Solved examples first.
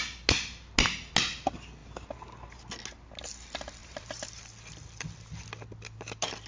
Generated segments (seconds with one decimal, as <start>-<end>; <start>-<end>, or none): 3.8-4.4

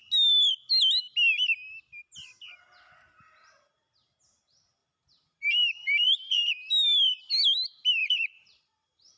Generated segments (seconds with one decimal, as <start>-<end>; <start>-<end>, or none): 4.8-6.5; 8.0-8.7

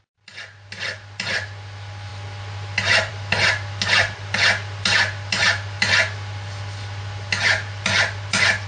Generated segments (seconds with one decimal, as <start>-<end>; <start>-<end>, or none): none

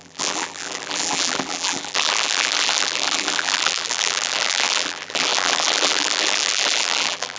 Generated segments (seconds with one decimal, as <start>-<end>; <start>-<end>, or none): 0.0-7.4